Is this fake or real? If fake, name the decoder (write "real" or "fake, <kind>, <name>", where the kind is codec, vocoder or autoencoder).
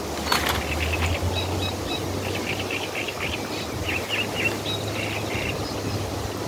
real